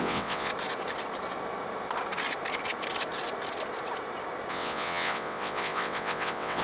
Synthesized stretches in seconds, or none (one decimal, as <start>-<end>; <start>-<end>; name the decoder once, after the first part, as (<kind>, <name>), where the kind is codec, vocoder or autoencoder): 0.0-0.5 (vocoder, WaveNeXt); 4.5-6.6